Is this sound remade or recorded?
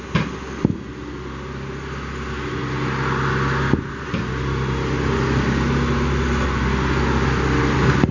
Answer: recorded